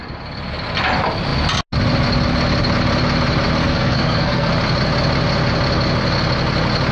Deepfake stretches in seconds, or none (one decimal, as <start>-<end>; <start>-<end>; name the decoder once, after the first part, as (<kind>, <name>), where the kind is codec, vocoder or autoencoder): 3.6-4.5 (codec, SNAC)